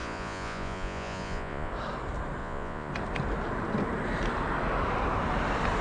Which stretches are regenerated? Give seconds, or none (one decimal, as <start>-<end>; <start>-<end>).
0.0-1.7; 2.4-2.9